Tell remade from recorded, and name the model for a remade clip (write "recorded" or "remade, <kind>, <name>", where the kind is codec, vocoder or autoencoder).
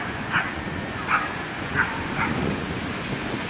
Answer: remade, vocoder, Vocos